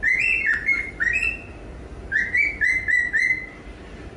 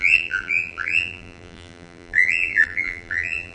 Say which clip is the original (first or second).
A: first